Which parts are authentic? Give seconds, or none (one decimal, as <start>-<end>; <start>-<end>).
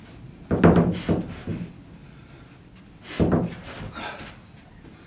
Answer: 0.0-5.1